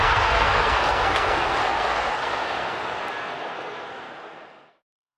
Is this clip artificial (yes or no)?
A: yes